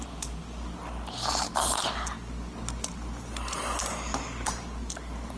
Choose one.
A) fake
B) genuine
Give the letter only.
B